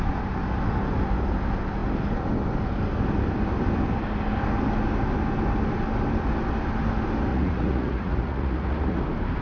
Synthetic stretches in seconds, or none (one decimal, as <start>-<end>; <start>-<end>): 7.3-9.0